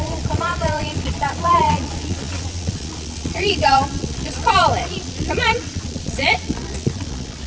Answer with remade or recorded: remade